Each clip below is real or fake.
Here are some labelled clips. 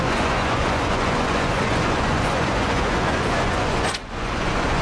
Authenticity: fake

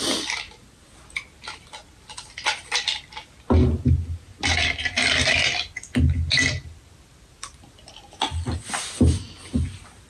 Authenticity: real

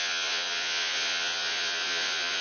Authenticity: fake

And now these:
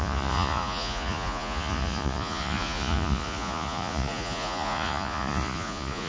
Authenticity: fake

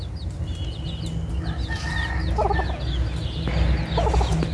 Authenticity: real